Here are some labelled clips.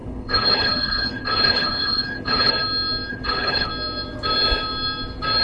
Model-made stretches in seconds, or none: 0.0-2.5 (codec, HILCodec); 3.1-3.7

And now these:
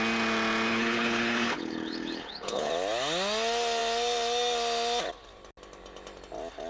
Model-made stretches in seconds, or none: 0.7-2.7 (codec, HILCodec)

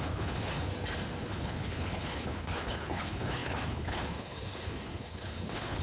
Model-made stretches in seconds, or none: 0.0-0.7 (codec, HILCodec); 1.2-5.8

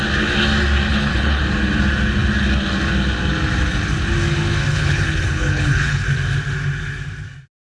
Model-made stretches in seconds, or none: 0.9-1.4 (codec, HILCodec); 4.7-6.0